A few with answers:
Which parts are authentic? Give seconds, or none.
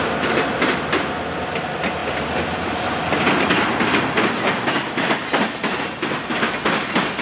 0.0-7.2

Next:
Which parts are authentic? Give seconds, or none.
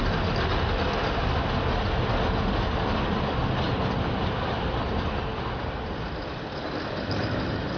0.0-7.8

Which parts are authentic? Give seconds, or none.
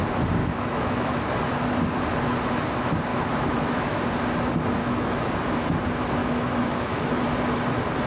0.0-0.4; 1.2-3.1; 4.0-4.8; 5.3-6.2; 7.2-8.1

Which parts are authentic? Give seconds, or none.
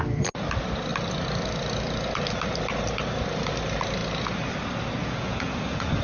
0.0-5.0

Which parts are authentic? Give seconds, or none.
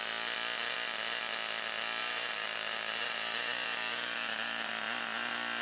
0.0-2.0; 4.7-5.6